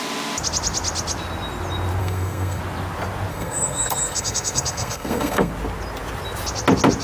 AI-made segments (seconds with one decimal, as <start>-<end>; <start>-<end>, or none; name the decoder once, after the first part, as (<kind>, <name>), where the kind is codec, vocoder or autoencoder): 2.0-2.6 (codec, SNAC); 3.3-5.5